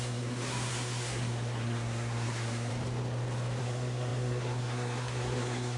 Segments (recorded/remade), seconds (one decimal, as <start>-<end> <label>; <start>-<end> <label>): 0.0-2.7 remade; 2.7-3.6 recorded; 3.6-5.8 remade